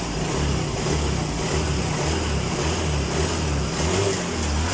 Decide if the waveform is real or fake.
real